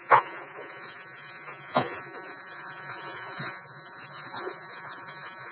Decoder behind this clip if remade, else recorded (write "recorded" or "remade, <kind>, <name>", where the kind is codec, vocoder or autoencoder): remade, vocoder, Vocos